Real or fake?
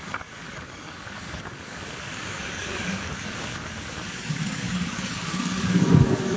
fake